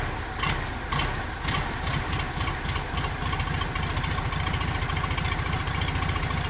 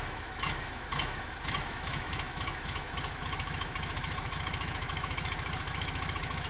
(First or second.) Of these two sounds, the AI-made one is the second